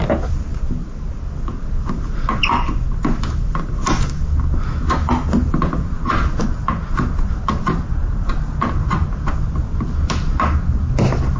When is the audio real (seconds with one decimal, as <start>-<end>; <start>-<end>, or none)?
0.0-11.4